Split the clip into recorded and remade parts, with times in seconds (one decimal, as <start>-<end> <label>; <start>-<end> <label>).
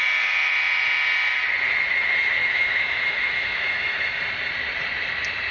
0.0-2.4 recorded; 2.4-4.2 remade; 4.2-5.5 recorded